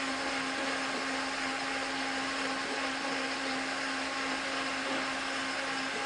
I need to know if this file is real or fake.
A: real